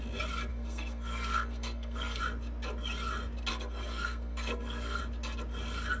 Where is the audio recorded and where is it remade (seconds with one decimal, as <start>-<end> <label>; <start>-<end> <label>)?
0.0-0.5 recorded; 0.5-2.2 remade; 2.2-3.5 recorded; 3.5-5.0 remade; 5.0-6.0 recorded